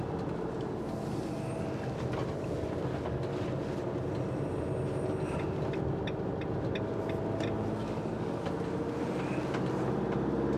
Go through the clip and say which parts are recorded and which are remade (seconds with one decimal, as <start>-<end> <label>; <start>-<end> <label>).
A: 0.0-7.8 recorded; 7.8-8.4 remade; 8.4-10.6 recorded